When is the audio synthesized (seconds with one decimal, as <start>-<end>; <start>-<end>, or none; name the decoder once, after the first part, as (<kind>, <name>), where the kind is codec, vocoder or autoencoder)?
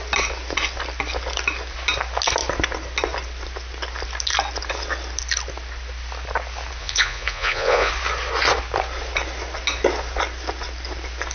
6.8-7.9 (vocoder, Vocos)